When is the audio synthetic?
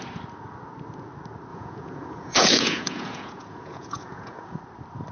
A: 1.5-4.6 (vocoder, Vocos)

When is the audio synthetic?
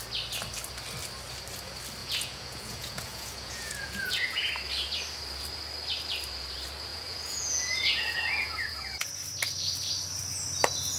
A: 2.0-4.5 (vocoder, Vocos); 6.9-9.1